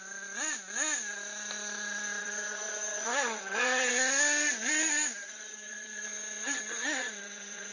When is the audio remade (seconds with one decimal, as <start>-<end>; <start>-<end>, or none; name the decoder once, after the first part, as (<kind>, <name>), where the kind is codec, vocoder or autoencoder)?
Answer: 2.2-3.9 (vocoder, HiFi-GAN); 5.2-7.7